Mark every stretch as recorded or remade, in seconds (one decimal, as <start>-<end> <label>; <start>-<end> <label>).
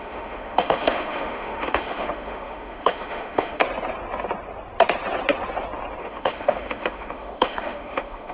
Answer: 0.0-3.6 remade; 3.6-6.0 recorded; 6.0-8.3 remade